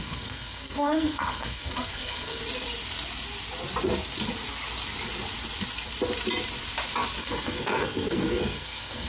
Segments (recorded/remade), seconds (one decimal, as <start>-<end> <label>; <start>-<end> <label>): 0.0-2.4 remade; 2.4-7.2 recorded; 7.2-9.1 remade